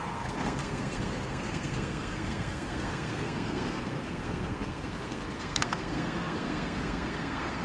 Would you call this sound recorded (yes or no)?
no